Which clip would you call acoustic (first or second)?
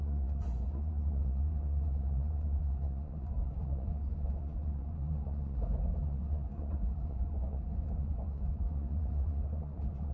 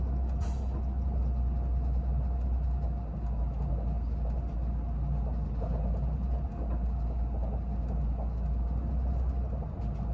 second